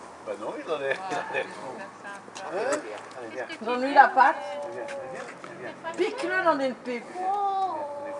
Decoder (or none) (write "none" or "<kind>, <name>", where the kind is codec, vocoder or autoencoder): none